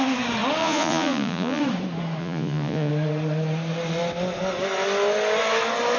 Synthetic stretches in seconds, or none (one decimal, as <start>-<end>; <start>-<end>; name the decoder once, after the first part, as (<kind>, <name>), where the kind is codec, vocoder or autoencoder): 0.6-1.6 (vocoder, Vocos); 2.2-2.9